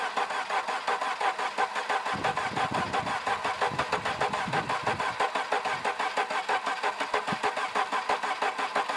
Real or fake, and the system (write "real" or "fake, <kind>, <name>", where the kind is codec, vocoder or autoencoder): real